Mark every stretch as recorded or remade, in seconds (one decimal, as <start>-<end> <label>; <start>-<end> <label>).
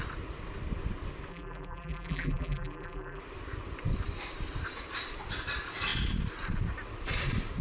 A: 0.0-1.3 recorded; 1.3-3.2 remade; 3.2-7.6 recorded